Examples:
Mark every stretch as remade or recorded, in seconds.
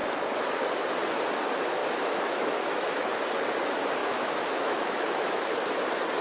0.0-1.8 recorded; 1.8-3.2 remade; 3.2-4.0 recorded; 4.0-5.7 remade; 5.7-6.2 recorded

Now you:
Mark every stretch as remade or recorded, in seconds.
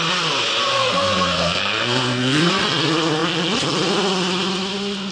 0.0-0.8 recorded; 0.8-2.5 remade; 2.5-5.1 recorded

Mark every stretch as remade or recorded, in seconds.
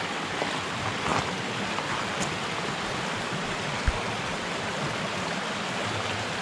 0.0-6.4 recorded